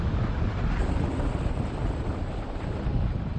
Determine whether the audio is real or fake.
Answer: fake